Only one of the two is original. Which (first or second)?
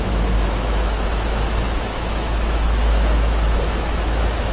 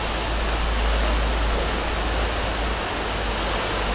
second